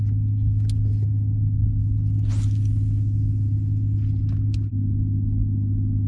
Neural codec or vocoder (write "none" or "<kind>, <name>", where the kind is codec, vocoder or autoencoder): none